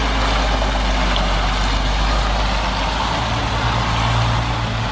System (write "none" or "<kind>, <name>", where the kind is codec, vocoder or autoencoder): none